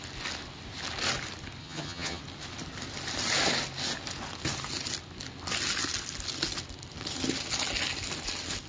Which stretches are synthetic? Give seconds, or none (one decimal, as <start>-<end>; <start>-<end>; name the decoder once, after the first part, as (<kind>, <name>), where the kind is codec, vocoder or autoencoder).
1.6-2.2 (vocoder, HiFi-GAN)